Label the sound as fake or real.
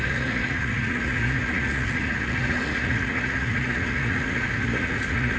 fake